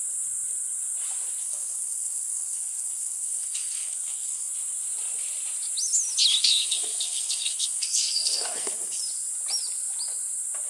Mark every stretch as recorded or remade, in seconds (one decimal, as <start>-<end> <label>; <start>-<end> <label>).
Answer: 0.0-1.4 recorded; 1.4-4.5 remade; 4.5-6.4 recorded; 6.4-9.0 remade; 9.0-10.7 recorded